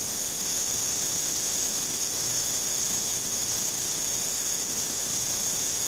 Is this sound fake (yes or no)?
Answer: yes